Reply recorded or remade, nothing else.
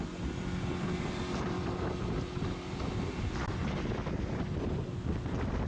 recorded